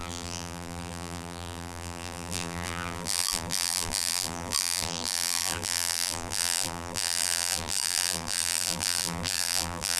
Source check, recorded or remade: remade